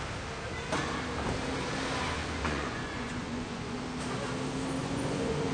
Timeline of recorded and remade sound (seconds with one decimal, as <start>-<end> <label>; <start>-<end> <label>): 0.0-2.2 recorded; 2.2-3.8 remade; 3.8-4.8 recorded; 4.8-5.5 remade